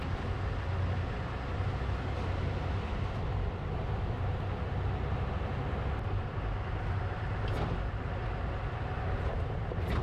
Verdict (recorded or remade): recorded